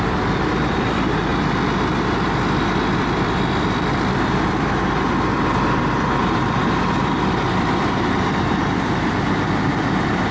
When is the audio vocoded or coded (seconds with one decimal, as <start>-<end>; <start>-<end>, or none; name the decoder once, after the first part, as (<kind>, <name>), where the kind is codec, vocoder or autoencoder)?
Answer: 0.0-1.3 (vocoder, BigVGAN v2); 3.0-10.3